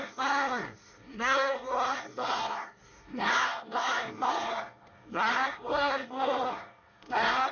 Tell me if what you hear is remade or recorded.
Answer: remade